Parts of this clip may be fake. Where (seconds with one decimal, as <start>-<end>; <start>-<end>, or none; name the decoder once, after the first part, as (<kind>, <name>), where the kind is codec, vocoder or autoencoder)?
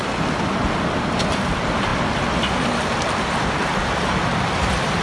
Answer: none